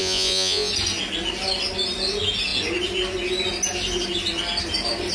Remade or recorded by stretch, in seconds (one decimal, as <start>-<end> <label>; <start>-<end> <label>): 0.0-0.7 remade; 0.7-5.1 recorded